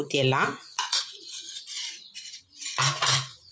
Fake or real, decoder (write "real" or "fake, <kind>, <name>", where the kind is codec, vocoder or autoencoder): fake, vocoder, Vocos